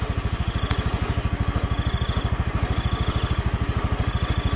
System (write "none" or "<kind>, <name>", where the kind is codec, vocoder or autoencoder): none